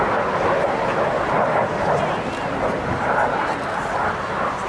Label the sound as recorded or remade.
recorded